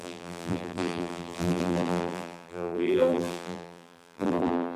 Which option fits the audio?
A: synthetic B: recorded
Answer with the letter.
A